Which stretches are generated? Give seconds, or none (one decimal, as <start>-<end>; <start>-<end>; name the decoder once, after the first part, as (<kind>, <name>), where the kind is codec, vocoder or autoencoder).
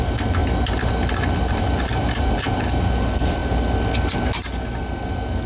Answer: 0.4-2.9 (vocoder, BigVGAN v2)